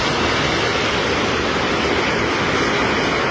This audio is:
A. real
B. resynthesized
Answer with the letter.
A